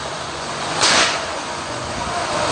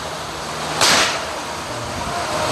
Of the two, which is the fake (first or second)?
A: first